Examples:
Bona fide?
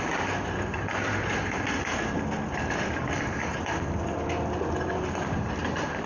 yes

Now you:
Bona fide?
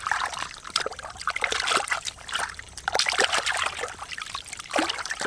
no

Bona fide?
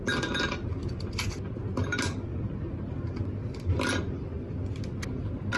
yes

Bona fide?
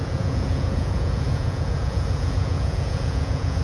no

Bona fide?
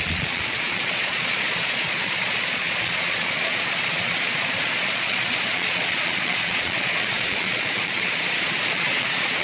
no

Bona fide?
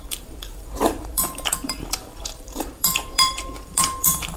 no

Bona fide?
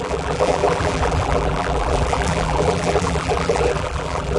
no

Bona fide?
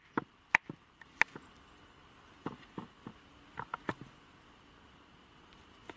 yes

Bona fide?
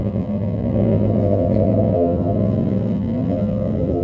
no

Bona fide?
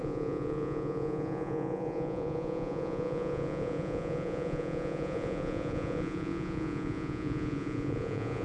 no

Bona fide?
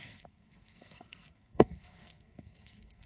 no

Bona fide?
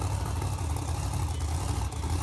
yes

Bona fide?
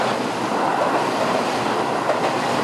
yes